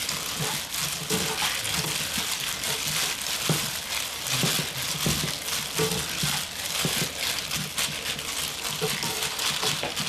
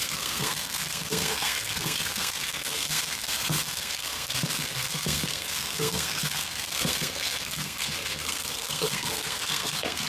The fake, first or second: second